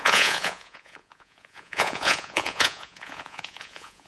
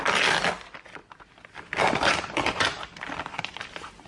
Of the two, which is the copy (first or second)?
first